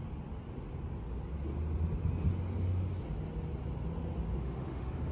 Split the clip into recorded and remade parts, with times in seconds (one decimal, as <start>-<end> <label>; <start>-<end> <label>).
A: 0.0-4.4 recorded; 4.4-5.1 remade